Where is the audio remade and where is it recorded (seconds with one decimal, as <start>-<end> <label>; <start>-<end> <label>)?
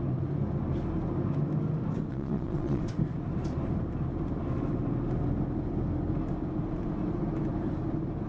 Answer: 0.0-2.1 recorded; 2.1-2.8 remade; 2.8-8.3 recorded